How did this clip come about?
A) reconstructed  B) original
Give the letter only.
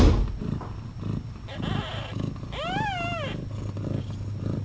B